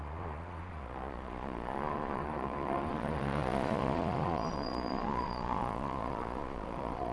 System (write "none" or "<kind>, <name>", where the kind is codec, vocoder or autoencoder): vocoder, Vocos